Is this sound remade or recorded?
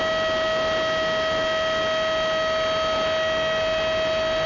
recorded